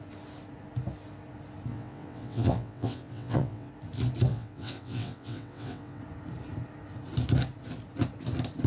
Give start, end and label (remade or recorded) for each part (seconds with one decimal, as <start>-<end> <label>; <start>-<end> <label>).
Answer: 0.0-1.7 recorded; 1.7-3.7 remade; 3.7-4.3 recorded; 4.3-6.0 remade; 6.0-8.7 recorded